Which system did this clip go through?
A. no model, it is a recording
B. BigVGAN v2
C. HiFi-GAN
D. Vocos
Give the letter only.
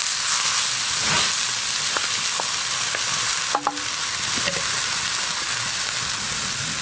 A